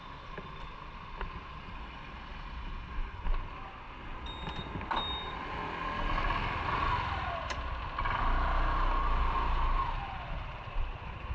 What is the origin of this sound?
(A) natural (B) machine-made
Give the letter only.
A